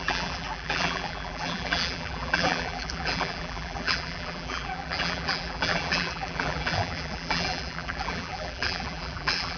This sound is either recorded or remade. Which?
remade